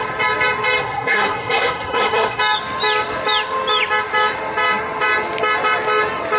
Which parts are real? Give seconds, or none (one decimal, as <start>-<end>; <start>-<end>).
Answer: 0.0-0.8; 2.4-6.4